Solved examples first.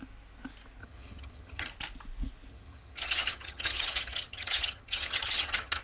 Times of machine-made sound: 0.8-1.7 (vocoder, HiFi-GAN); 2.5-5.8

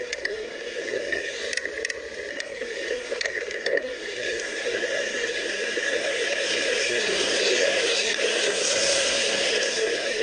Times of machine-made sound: 0.0-1.4 (codec, SNAC); 2.3-10.2

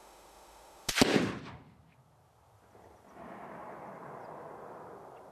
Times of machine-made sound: 0.0-0.9 (autoencoder, DAC-VAE)